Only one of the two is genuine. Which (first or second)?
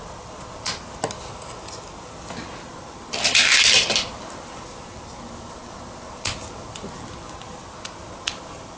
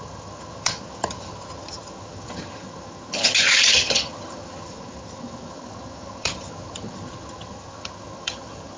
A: first